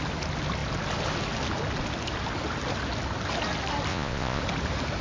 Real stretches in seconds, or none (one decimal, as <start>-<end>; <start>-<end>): 0.0-3.9; 4.4-5.0